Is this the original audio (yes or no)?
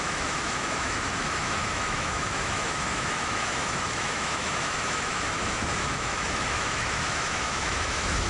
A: no